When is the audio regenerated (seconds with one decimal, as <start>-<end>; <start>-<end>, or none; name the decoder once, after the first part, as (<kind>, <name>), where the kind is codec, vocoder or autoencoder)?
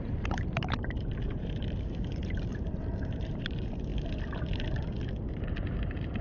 0.0-3.9 (vocoder, BigVGAN v2); 5.3-6.2